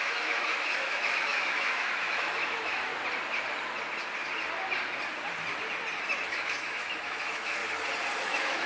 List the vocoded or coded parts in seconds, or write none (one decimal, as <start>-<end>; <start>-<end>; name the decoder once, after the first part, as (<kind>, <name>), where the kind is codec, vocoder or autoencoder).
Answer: 0.0-2.9 (autoencoder, DAC-VAE); 6.3-7.6; 8.2-8.7